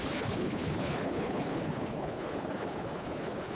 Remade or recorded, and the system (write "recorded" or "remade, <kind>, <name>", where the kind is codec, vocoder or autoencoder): remade, codec, HILCodec